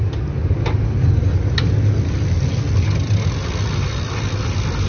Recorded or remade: recorded